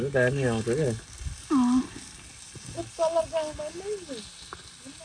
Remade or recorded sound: recorded